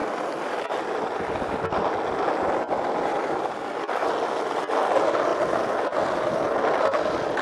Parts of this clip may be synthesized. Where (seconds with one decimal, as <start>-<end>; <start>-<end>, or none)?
none